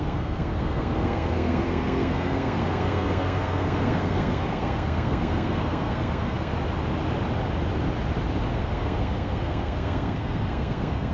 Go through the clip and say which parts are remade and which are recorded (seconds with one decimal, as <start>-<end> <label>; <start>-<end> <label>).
0.0-6.5 remade; 6.5-8.5 recorded; 8.5-11.1 remade